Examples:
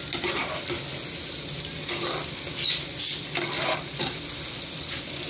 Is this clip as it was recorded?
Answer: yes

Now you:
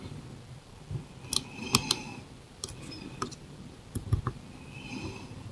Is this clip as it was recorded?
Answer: yes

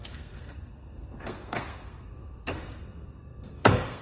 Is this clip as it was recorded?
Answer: no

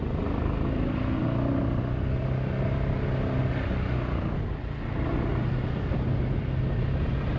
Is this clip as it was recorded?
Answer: yes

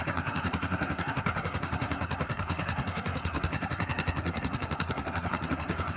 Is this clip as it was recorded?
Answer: no